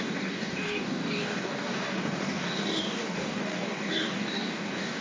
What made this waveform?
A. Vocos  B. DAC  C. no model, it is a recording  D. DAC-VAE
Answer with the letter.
B